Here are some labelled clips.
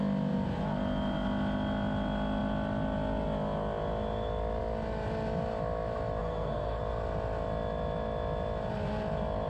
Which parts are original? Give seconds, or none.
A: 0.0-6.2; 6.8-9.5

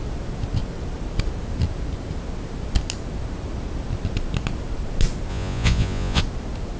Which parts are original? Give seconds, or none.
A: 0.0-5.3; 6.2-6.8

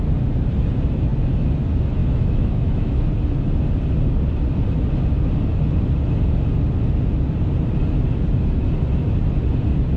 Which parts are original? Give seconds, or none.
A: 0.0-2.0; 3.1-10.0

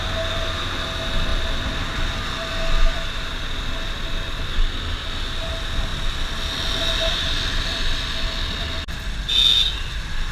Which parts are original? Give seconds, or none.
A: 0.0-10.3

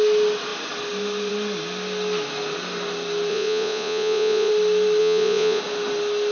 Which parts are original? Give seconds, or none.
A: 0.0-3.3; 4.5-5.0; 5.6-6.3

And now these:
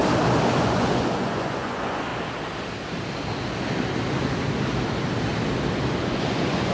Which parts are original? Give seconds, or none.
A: 0.0-0.6; 2.1-6.0

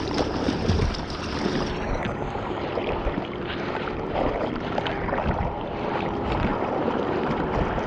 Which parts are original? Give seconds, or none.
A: 6.5-7.9

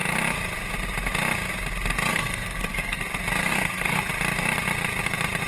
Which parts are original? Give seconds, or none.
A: 0.0-2.1; 3.0-3.4; 4.0-5.5